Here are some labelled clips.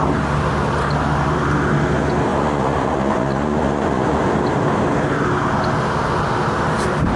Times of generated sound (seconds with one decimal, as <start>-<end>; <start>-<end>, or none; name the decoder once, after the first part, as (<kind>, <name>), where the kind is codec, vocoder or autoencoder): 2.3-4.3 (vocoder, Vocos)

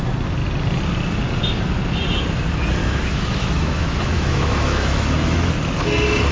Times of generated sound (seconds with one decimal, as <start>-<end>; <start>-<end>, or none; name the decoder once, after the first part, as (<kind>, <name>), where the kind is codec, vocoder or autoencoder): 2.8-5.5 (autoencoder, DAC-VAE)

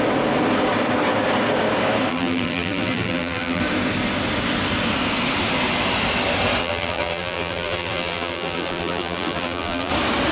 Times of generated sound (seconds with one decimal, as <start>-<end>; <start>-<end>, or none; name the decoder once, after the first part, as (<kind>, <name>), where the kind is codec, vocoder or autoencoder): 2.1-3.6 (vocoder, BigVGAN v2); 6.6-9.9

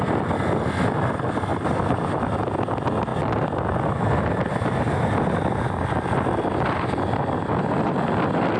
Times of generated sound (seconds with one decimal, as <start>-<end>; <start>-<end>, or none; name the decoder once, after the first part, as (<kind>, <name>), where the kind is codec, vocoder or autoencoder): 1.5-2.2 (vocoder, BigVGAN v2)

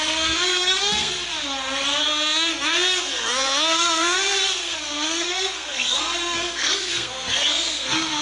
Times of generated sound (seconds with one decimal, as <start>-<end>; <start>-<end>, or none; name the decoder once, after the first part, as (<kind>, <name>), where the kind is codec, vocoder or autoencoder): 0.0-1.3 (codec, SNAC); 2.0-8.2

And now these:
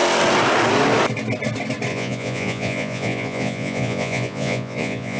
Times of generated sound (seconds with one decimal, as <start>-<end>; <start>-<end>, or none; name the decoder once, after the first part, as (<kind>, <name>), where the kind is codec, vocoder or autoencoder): 1.9-5.2 (vocoder, Vocos)

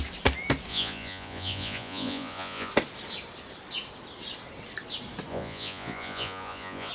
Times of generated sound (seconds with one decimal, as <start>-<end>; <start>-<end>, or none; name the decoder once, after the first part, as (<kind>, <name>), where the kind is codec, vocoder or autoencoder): 0.7-2.7 (vocoder, Vocos); 5.3-6.9

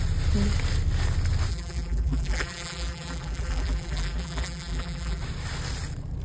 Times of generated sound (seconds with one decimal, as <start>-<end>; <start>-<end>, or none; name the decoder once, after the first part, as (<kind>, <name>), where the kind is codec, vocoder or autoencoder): 1.5-5.2 (vocoder, BigVGAN v2)